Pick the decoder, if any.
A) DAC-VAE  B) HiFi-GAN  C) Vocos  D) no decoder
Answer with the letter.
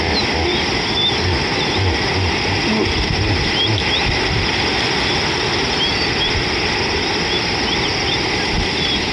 D